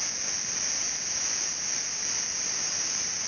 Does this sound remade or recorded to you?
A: recorded